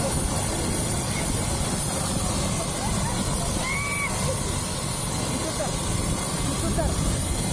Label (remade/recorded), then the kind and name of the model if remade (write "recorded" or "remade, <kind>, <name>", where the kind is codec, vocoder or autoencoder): recorded